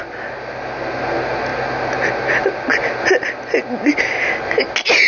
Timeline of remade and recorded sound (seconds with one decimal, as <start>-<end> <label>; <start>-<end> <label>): 0.0-5.1 recorded